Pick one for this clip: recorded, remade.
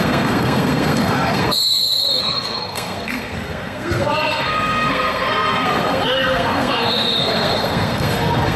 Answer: remade